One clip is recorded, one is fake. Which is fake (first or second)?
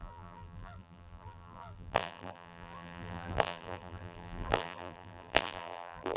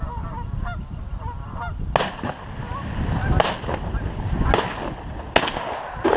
first